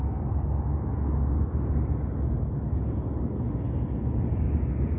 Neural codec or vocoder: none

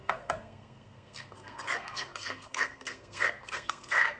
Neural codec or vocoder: codec, SNAC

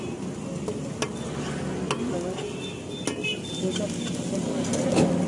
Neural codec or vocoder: none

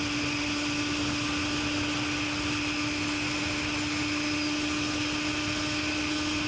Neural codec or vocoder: none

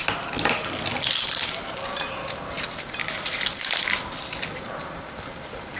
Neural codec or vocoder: none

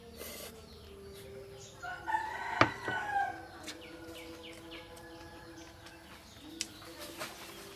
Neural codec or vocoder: none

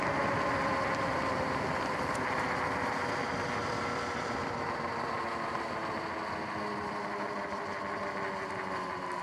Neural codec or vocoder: none